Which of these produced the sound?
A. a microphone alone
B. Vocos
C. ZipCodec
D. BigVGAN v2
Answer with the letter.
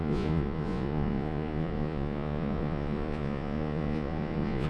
B